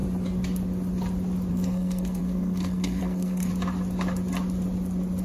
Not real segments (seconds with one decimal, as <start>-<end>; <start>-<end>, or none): 1.5-3.5